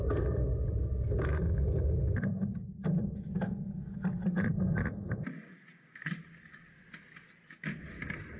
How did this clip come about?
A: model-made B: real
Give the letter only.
B